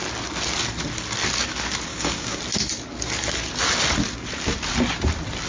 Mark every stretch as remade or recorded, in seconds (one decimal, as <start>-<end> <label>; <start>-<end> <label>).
0.0-1.9 recorded; 1.9-2.4 remade; 2.4-5.5 recorded